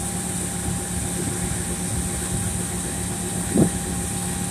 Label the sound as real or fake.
real